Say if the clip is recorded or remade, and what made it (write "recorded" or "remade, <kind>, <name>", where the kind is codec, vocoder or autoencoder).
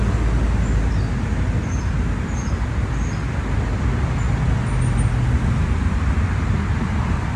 recorded